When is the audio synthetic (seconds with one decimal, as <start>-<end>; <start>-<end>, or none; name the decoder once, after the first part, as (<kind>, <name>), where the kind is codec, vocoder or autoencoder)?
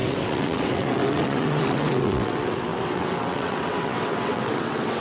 0.0-5.0 (vocoder, WaveNeXt)